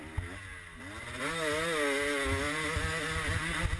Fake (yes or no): no